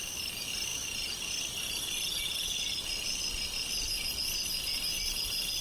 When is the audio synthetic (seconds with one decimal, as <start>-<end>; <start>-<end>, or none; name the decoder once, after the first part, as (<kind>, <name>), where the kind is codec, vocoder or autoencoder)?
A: none